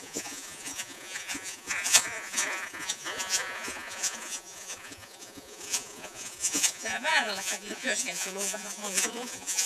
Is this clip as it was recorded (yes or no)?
no